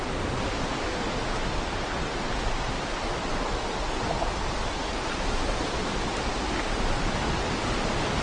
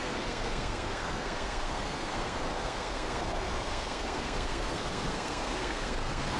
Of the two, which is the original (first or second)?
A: first